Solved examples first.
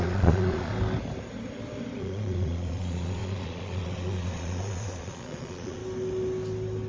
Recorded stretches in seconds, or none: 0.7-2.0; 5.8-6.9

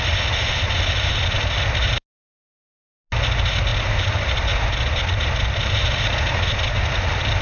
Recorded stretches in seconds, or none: 0.0-7.4

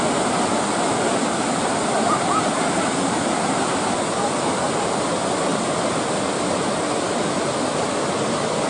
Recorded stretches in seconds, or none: 0.0-8.7